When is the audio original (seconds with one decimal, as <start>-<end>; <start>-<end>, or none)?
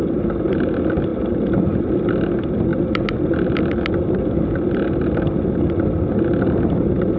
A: 0.0-7.2